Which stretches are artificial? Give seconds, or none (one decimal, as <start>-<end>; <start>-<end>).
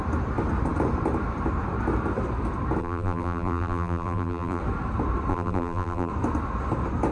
2.8-4.6; 5.3-6.1